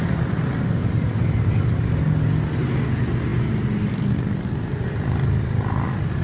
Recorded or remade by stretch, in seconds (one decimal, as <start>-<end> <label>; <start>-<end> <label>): 0.0-0.8 recorded; 0.8-1.6 remade; 1.6-6.2 recorded